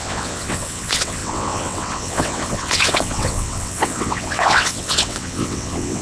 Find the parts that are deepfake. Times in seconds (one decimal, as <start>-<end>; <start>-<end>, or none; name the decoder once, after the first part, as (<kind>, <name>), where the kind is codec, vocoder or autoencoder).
0.0-6.0 (vocoder, WaveNeXt)